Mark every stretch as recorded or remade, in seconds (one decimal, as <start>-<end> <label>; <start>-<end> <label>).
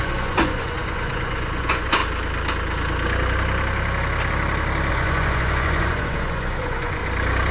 0.0-2.0 remade; 2.0-4.9 recorded; 4.9-7.0 remade; 7.0-7.5 recorded